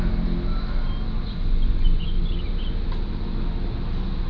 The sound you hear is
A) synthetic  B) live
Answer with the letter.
B